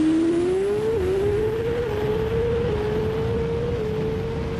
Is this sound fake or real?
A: real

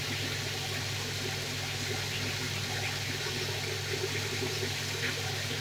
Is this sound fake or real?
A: real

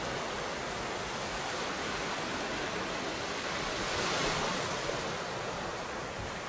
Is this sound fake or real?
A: real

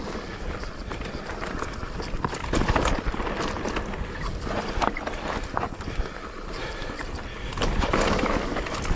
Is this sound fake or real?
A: real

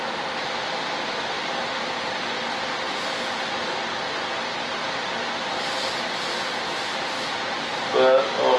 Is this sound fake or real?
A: real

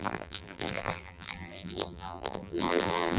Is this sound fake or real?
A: fake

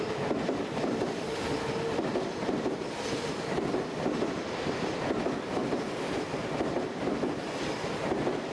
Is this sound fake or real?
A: fake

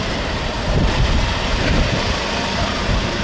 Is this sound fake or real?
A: fake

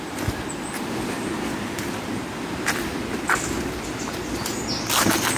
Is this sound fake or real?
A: real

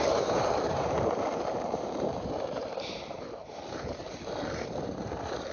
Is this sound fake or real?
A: fake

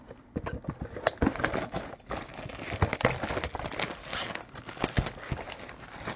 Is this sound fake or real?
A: real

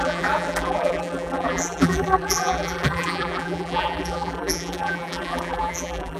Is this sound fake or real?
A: fake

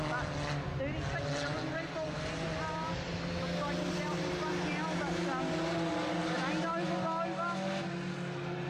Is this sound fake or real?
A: real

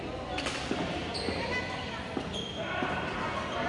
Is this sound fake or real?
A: real